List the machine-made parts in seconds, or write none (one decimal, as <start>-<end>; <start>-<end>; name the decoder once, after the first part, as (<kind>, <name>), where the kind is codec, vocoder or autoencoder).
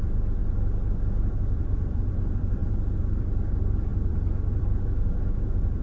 none